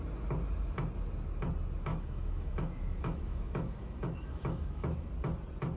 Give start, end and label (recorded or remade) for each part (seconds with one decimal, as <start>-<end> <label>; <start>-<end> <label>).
0.0-1.9 recorded; 1.9-5.1 remade; 5.1-5.8 recorded